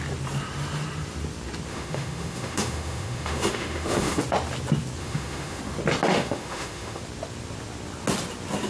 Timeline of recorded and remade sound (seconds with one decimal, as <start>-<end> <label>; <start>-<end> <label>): 0.0-1.7 recorded; 1.7-4.2 remade; 4.2-5.0 recorded; 5.0-5.6 remade; 5.6-6.1 recorded; 6.1-7.0 remade; 7.0-8.7 recorded